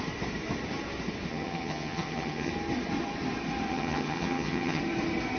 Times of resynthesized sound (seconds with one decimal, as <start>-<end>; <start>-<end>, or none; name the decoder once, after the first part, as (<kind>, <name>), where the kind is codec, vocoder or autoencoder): 1.3-2.5 (vocoder, HiFi-GAN); 3.7-4.8

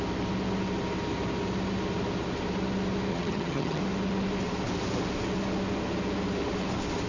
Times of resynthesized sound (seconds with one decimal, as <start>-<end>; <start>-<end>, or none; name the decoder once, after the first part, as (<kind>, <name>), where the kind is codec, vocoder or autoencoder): 3.1-3.8 (vocoder, HiFi-GAN)

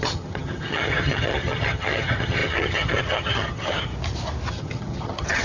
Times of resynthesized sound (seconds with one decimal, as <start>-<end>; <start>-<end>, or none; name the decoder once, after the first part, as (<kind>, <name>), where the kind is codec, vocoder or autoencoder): 0.0-3.9 (vocoder, HiFi-GAN); 4.5-5.4

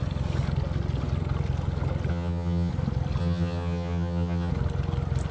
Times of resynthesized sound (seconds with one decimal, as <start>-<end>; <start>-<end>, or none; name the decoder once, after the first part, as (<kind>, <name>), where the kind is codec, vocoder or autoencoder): 2.1-2.7 (vocoder, HiFi-GAN); 3.2-4.5

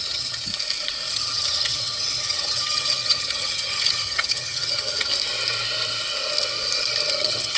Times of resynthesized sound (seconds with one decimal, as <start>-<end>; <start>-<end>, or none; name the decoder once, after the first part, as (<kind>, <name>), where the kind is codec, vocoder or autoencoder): 0.0-0.5 (vocoder, HiFi-GAN); 1.1-5.1; 7.1-7.6

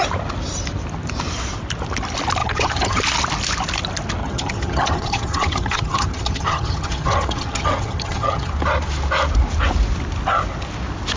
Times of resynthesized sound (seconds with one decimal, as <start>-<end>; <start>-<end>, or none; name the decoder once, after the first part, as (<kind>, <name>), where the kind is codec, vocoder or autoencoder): 2.4-3.0 (vocoder, HiFi-GAN); 4.2-8.5

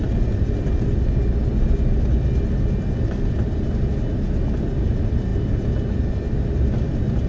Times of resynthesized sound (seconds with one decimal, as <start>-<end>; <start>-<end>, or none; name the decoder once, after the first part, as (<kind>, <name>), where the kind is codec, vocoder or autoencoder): none

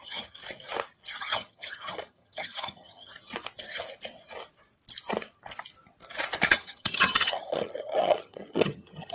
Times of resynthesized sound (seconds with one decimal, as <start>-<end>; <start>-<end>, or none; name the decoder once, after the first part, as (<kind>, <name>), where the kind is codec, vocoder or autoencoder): 0.0-0.4 (vocoder, HiFi-GAN); 1.2-3.1; 6.5-9.1